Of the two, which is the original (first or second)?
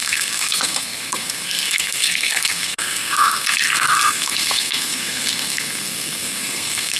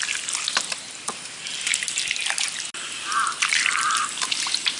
second